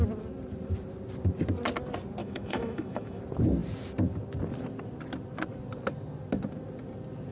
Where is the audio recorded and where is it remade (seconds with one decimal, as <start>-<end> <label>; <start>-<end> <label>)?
0.0-2.2 recorded; 2.2-3.2 remade; 3.2-7.3 recorded